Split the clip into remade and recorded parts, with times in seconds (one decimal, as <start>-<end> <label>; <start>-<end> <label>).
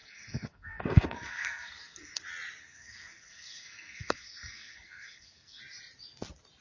0.0-2.2 remade; 2.2-2.6 recorded; 2.6-5.6 remade; 5.6-6.6 recorded